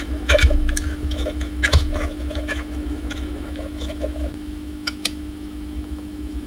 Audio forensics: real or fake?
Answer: fake